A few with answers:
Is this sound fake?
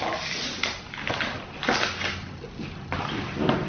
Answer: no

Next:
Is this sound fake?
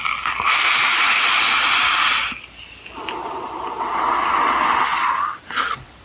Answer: no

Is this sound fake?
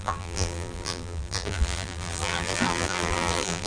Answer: yes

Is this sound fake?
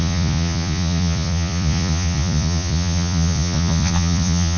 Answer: yes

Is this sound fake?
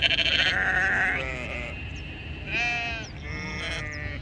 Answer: no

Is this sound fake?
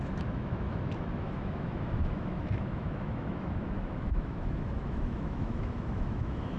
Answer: yes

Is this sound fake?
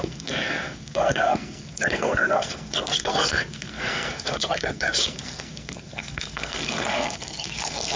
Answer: yes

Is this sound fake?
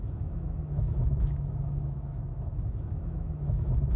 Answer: yes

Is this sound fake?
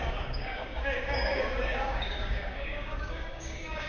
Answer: yes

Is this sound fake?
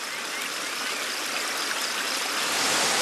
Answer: no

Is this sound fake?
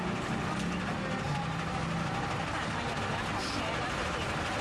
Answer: no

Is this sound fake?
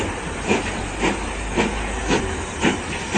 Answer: yes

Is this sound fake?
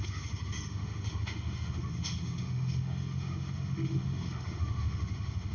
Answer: yes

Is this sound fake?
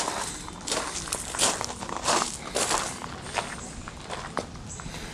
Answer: no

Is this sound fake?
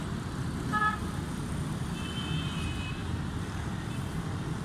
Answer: yes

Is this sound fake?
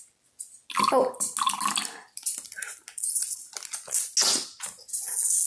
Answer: no